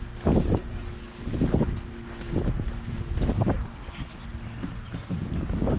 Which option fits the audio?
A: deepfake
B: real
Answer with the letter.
B